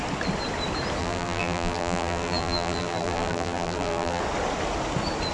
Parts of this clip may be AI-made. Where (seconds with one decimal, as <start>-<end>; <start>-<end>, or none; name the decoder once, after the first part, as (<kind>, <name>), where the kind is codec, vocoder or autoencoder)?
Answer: 1.0-4.2 (vocoder, BigVGAN v2)